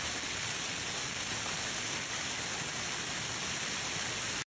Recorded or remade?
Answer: recorded